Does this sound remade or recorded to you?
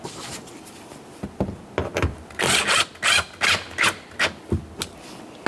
recorded